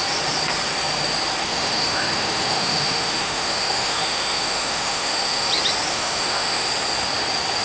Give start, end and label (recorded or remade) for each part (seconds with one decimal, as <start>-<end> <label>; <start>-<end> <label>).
0.0-1.4 recorded; 1.4-5.5 remade; 5.5-5.9 recorded; 5.9-6.7 remade; 6.7-7.6 recorded